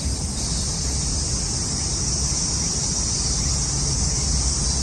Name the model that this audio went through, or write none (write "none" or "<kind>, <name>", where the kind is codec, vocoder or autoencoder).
none